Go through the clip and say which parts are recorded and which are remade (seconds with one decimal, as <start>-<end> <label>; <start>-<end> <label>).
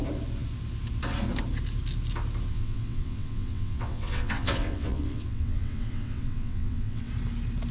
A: 0.0-2.5 recorded; 2.5-7.1 remade; 7.1-7.7 recorded